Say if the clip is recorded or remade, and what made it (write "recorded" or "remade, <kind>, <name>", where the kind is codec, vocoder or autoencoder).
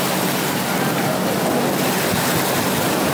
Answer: remade, vocoder, BigVGAN v2